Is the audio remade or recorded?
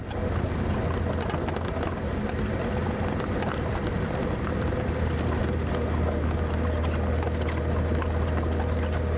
recorded